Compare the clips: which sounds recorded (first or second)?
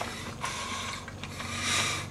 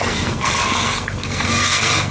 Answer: first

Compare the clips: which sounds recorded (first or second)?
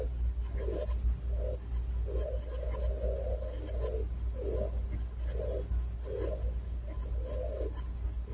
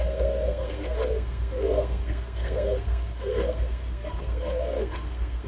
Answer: first